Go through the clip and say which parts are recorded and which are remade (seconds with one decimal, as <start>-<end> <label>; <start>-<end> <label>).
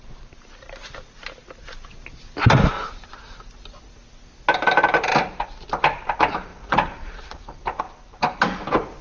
0.0-6.5 recorded; 6.5-7.8 remade; 7.8-9.0 recorded